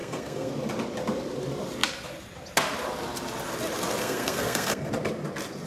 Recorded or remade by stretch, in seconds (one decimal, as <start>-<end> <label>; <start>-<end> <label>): 0.0-0.5 remade; 0.5-4.0 recorded; 4.0-4.9 remade; 4.9-5.7 recorded